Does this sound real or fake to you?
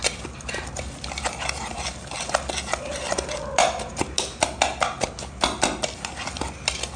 real